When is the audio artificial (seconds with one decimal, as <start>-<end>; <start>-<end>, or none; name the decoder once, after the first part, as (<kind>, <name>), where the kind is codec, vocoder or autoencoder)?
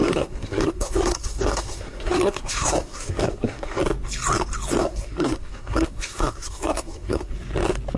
0.0-3.8 (codec, SNAC); 4.8-7.3